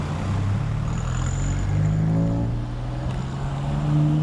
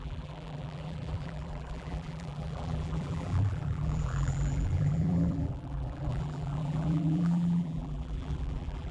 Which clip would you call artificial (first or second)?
second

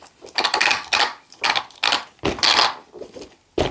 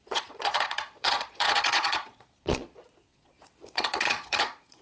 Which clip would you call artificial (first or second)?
second